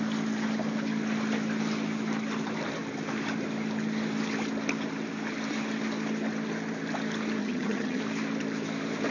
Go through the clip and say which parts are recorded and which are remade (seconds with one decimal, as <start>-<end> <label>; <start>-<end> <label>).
0.0-7.4 recorded; 7.4-8.0 remade; 8.0-9.1 recorded